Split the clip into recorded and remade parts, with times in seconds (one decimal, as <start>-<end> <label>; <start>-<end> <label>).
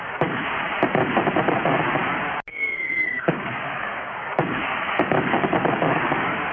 0.0-0.6 remade; 0.6-3.0 recorded; 3.0-6.5 remade